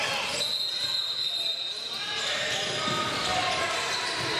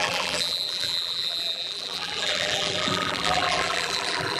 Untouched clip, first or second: first